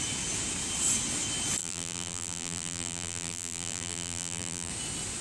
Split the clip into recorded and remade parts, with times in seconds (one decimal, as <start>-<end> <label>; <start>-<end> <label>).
0.0-1.6 recorded; 1.6-4.7 remade; 4.7-5.2 recorded

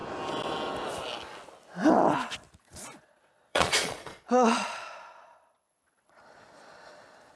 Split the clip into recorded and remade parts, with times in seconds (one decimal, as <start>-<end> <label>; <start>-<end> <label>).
0.0-2.6 recorded; 2.6-7.0 remade; 7.0-7.4 recorded

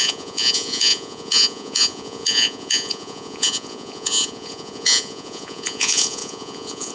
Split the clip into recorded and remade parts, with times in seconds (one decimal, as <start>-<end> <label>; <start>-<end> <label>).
0.0-6.9 remade

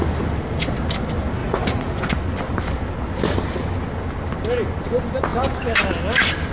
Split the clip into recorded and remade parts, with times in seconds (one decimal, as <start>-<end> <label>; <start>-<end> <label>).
0.0-1.4 recorded; 1.4-2.0 remade; 2.0-6.5 recorded

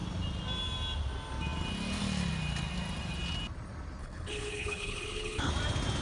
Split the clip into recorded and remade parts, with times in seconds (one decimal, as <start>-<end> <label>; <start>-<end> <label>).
0.0-4.0 recorded; 4.0-5.5 remade; 5.5-6.0 recorded

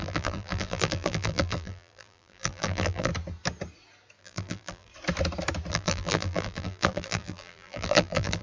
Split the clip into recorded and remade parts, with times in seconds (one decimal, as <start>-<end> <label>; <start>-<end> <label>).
0.0-3.1 remade; 3.1-4.2 recorded; 4.2-4.9 remade; 4.9-5.7 recorded; 5.7-8.4 remade